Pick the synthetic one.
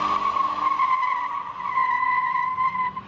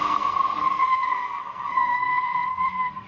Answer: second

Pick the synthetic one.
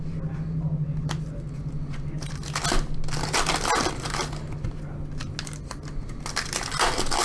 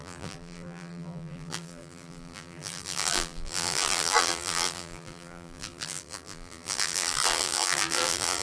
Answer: second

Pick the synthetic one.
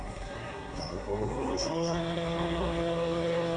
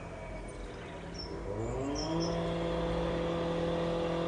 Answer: first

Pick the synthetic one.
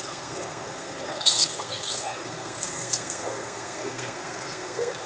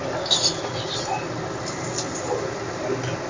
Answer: first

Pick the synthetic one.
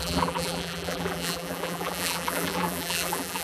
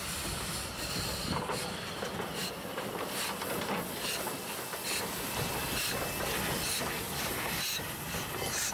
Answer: first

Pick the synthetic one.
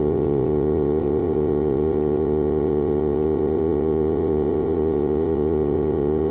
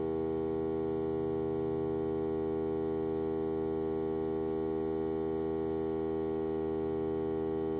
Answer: first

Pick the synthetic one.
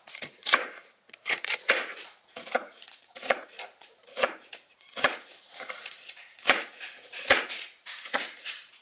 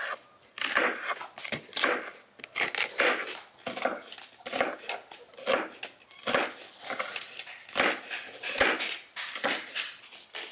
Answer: first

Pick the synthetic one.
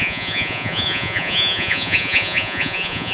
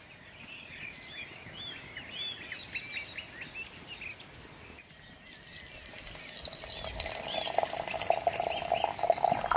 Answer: first